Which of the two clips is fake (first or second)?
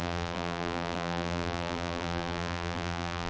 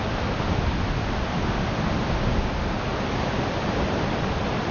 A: first